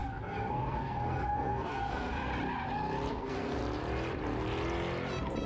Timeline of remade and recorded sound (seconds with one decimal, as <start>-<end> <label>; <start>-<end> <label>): 0.0-2.3 remade; 2.3-3.1 recorded; 3.1-3.6 remade; 3.6-5.5 recorded